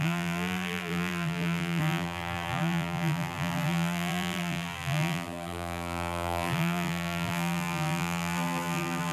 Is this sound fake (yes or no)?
yes